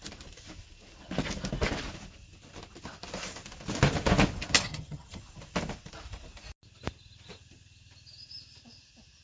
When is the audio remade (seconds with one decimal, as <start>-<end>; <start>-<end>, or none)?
4.7-5.2